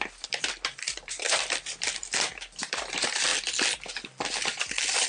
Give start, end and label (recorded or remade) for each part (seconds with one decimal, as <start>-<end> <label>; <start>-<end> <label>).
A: 0.0-3.3 remade; 3.3-5.1 recorded

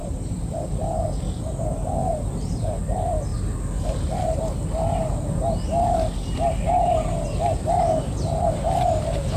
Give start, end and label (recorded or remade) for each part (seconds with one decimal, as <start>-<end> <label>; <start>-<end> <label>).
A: 0.0-0.9 remade; 0.9-2.0 recorded; 2.0-2.5 remade; 2.5-9.4 recorded

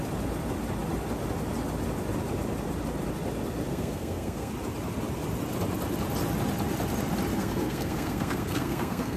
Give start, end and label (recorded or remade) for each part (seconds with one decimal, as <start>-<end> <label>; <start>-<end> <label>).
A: 0.0-3.7 recorded; 3.7-4.5 remade; 4.5-7.3 recorded; 7.3-9.2 remade

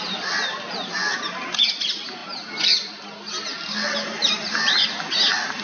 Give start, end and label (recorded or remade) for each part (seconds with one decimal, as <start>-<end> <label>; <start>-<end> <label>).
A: 0.0-5.6 recorded

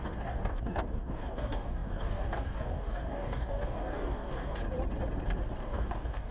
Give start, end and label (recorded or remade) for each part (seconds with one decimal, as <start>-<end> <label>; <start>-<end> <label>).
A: 0.0-4.6 remade; 4.6-5.6 recorded; 5.6-6.3 remade

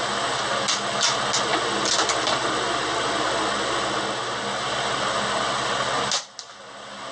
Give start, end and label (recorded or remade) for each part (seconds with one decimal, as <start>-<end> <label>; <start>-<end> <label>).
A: 0.0-7.1 recorded

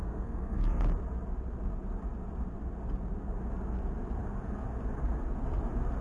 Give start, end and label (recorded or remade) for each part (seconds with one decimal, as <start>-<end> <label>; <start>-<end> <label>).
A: 0.0-0.8 remade; 0.8-6.0 recorded

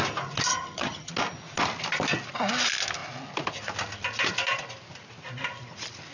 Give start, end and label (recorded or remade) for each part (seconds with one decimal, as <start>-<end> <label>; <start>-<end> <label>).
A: 0.0-0.5 recorded; 0.5-1.1 remade; 1.1-6.1 recorded